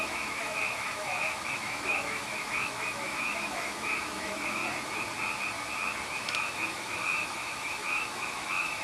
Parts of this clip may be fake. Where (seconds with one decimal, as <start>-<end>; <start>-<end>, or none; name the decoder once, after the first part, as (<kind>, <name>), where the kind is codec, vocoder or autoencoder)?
0.0-4.6 (autoencoder, DAC-VAE); 6.2-8.8

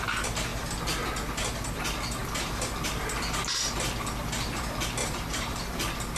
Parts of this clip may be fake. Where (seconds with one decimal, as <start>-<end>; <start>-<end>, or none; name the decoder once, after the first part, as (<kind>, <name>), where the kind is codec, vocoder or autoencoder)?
5.0-5.6 (vocoder, BigVGAN v2)

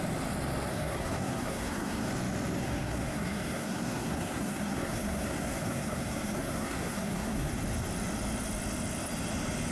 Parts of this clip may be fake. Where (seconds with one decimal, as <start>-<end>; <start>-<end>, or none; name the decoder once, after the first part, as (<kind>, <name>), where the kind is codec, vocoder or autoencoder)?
0.7-2.1 (codec, SNAC); 2.6-7.5

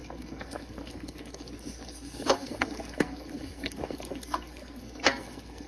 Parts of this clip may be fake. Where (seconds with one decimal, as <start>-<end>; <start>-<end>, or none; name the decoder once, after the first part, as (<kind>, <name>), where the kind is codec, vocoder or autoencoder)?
0.0-5.7 (codec, SNAC)

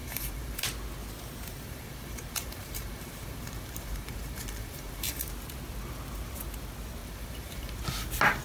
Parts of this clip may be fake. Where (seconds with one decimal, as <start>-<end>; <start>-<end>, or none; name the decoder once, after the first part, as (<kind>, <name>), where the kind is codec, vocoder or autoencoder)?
0.0-0.6 (vocoder, BigVGAN v2); 1.5-5.3; 7.0-7.7